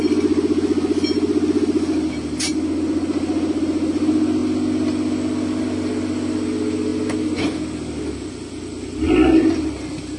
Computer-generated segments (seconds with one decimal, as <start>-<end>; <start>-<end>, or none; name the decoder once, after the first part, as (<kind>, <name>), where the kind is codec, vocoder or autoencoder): none